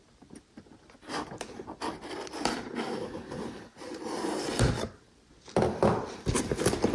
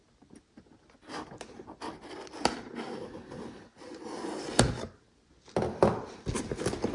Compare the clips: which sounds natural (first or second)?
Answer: second